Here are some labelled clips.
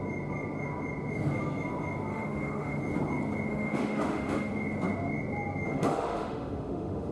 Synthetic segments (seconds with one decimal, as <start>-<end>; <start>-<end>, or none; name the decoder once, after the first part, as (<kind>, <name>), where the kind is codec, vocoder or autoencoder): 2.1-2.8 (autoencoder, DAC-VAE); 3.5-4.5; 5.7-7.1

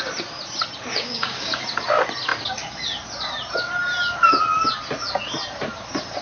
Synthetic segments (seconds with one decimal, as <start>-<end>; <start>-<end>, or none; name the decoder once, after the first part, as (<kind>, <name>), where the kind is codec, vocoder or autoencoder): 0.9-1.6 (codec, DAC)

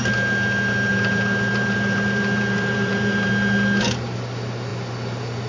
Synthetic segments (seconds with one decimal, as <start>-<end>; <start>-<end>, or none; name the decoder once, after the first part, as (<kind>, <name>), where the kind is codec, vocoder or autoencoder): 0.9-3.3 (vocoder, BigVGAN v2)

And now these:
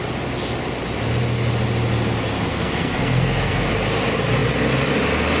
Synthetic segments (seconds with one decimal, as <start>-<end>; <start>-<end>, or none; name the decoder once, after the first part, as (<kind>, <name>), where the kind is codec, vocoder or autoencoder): 2.5-3.7 (codec, SNAC)

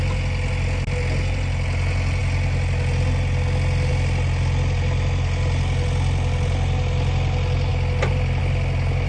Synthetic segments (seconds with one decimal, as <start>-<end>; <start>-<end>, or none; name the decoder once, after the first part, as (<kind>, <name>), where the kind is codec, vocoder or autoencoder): none